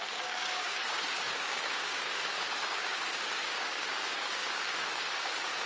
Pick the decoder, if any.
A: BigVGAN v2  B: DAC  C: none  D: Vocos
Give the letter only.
B